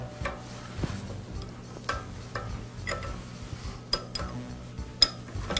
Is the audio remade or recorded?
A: recorded